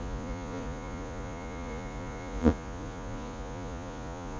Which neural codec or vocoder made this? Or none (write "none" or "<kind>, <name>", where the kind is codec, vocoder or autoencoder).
vocoder, Vocos